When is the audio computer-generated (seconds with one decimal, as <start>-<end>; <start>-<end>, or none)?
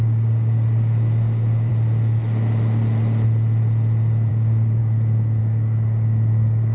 0.0-1.7; 4.3-6.7